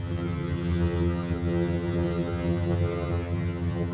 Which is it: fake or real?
fake